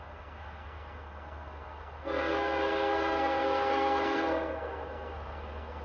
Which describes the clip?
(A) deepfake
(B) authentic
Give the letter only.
A